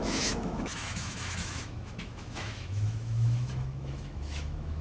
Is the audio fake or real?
fake